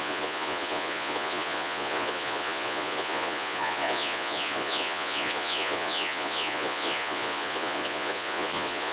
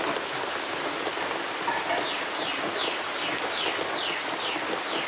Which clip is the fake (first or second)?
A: first